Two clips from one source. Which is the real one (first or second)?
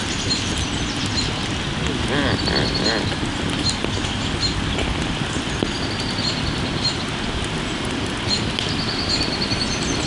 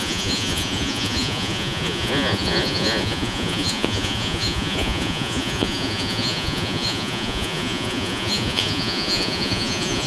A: first